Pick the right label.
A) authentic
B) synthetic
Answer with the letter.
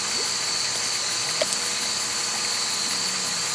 A